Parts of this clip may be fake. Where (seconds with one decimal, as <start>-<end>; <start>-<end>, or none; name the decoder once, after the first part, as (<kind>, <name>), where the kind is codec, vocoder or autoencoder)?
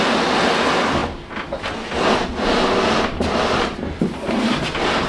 none